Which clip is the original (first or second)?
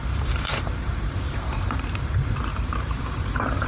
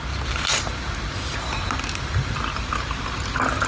second